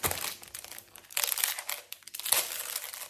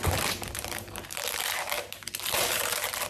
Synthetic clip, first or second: second